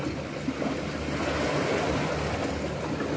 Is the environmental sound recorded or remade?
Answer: recorded